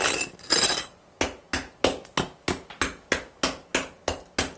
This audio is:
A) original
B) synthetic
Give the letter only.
A